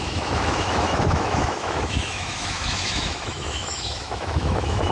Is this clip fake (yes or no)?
yes